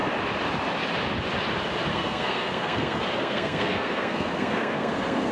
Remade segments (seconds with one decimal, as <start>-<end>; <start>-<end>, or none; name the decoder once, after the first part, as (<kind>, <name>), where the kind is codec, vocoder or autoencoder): 1.9-5.3 (codec, SNAC)